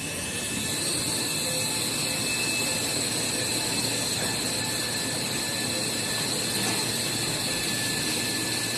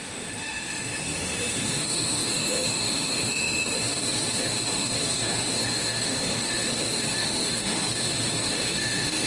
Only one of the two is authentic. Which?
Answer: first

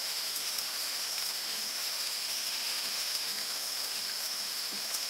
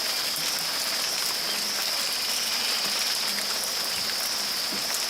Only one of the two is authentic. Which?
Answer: second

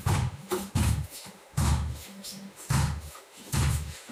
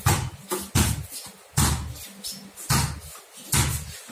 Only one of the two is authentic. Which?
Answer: second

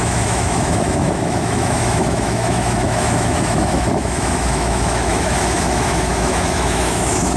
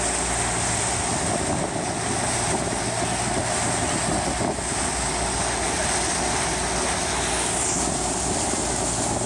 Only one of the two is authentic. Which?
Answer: second